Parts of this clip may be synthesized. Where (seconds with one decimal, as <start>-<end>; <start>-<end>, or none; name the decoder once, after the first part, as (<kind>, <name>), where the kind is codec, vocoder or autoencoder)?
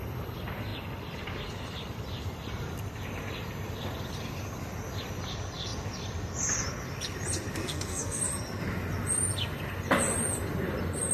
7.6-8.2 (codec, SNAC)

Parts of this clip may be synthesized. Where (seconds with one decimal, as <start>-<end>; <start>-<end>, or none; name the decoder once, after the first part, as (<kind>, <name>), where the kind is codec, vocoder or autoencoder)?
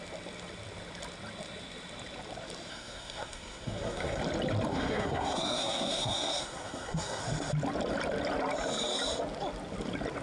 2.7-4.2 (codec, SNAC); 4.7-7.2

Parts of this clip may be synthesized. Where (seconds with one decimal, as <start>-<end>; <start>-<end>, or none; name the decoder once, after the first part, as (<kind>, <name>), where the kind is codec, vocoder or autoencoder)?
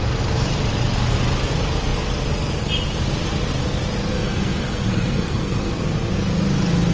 4.1-5.7 (codec, SNAC)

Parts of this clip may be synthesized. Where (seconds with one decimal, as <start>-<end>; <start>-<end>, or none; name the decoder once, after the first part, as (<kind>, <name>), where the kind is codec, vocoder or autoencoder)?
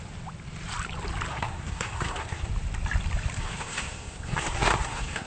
1.3-2.5 (codec, SNAC); 3.4-5.3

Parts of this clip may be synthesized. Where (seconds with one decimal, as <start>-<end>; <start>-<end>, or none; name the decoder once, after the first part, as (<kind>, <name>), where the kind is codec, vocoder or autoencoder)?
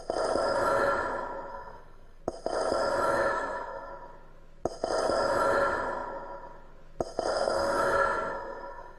1.5-2.2 (codec, SNAC); 3.1-3.9; 7.3-9.0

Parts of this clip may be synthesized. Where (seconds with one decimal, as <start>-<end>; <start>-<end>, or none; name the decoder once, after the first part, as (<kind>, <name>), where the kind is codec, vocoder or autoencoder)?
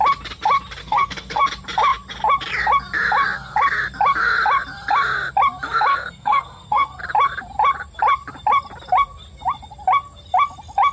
0.8-1.4 (codec, SNAC); 5.9-7.0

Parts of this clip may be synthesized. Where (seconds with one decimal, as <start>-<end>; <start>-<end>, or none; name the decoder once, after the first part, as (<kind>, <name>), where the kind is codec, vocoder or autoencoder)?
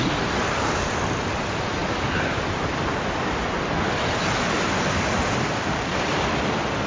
none